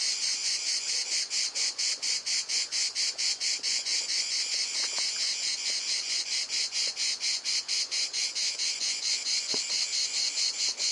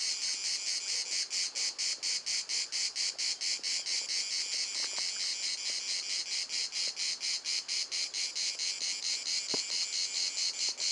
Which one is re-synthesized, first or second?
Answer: first